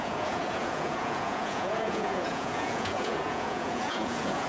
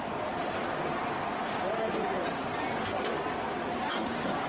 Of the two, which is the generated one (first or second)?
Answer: first